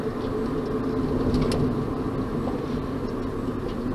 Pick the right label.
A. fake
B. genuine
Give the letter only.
B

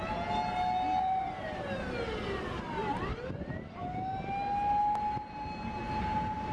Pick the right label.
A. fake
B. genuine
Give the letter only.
B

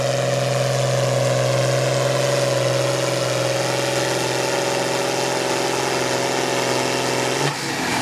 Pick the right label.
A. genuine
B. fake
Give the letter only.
A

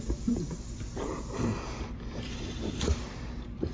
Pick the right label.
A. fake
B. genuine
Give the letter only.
A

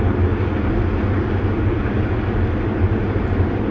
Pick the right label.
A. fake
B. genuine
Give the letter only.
A